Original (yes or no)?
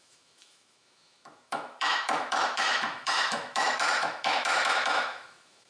no